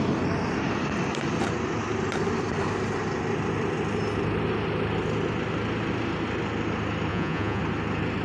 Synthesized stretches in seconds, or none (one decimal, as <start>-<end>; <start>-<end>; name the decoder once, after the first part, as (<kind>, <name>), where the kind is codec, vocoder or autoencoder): 7.1-7.6 (vocoder, Vocos)